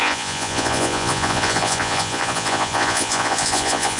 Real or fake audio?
fake